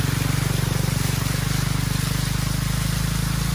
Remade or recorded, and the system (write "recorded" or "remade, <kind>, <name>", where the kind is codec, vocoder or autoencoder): recorded